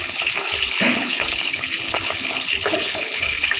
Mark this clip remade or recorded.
remade